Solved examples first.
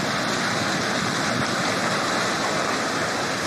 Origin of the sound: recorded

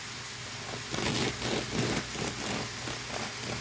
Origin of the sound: recorded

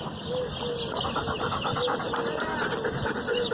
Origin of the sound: recorded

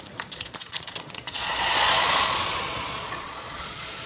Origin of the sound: remade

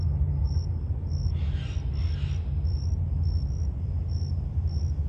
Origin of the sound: recorded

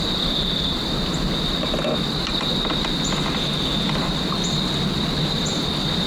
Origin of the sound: recorded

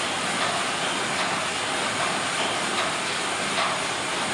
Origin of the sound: recorded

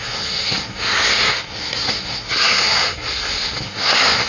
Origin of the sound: remade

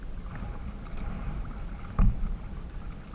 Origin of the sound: recorded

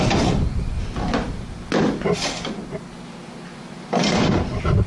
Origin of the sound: recorded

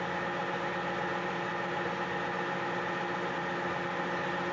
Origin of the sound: recorded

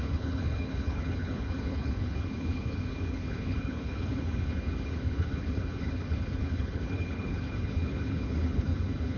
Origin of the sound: remade